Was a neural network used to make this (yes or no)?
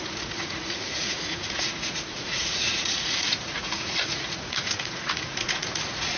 yes